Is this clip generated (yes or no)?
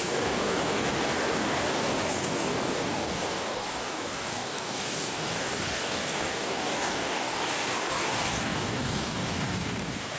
yes